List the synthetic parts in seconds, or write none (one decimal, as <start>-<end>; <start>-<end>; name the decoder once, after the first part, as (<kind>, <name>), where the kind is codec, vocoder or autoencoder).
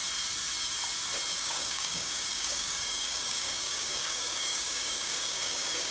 1.4-5.9 (codec, DAC)